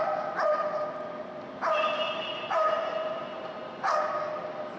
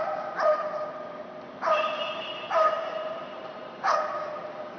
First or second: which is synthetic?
second